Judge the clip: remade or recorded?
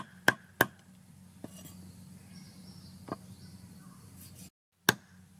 recorded